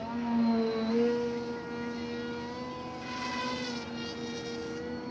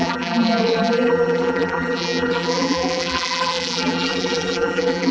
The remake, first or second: second